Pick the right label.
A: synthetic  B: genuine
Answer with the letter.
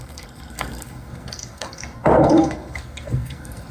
A